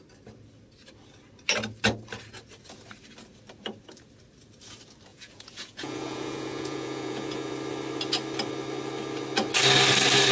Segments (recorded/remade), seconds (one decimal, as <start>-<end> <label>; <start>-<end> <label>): 0.0-5.1 recorded; 5.1-7.5 remade; 7.5-10.3 recorded